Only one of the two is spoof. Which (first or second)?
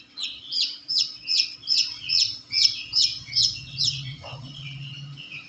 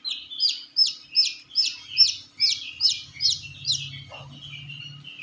first